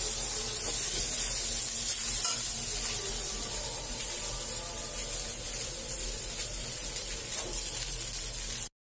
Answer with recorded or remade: recorded